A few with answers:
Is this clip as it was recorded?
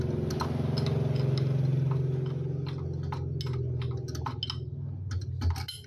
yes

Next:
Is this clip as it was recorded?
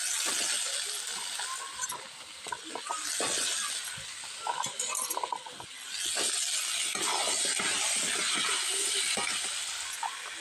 yes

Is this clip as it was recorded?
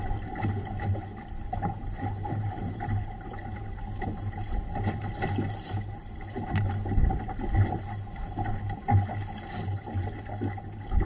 yes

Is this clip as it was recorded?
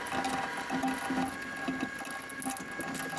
yes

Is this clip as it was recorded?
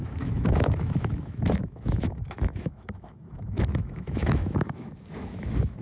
no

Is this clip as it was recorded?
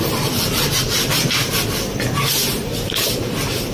yes